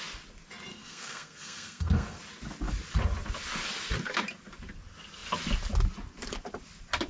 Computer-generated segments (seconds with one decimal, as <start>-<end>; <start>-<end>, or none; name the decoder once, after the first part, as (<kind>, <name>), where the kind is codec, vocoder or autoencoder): 0.7-2.2 (codec, SNAC)